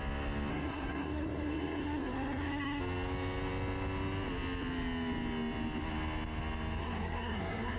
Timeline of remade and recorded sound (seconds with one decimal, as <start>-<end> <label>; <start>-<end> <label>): 0.0-0.5 recorded; 0.5-2.8 remade; 2.8-6.8 recorded; 6.8-7.8 remade